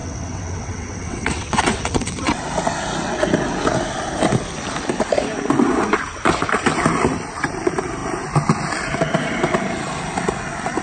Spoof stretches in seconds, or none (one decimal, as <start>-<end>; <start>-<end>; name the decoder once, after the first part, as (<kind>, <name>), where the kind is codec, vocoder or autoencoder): 0.0-2.4 (vocoder, WaveNeXt)